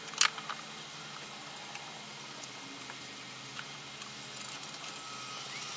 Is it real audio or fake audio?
real